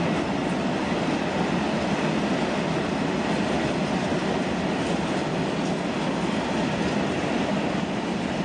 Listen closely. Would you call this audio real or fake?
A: real